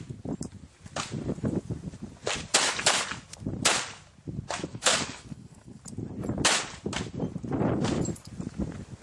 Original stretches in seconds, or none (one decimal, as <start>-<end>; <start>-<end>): 0.0-4.7; 5.8-9.0